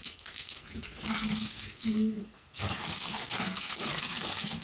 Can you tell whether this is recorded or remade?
remade